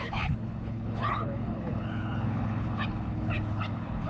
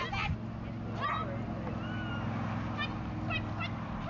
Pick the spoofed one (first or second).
first